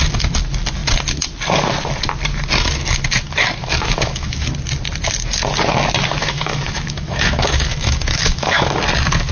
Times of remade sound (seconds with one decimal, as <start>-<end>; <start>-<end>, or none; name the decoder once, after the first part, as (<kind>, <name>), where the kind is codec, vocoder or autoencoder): 3.6-4.5 (autoencoder, DAC-VAE); 6.2-8.8